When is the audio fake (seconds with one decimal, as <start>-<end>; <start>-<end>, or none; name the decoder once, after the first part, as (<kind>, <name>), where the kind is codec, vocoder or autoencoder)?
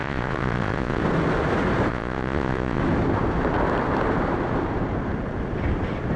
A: 0.0-1.0 (vocoder, Vocos); 1.9-2.8